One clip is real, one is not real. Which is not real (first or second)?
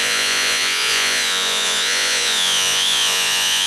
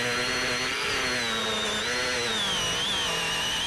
first